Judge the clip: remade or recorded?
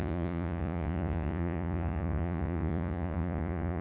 remade